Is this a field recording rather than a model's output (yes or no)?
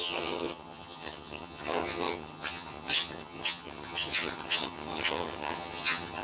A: no